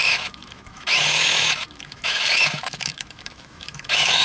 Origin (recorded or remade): remade